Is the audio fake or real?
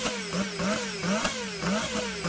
real